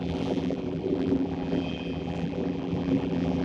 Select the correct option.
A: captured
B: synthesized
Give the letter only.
B